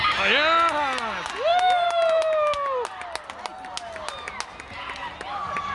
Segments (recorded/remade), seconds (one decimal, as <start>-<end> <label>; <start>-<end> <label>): 0.0-5.7 recorded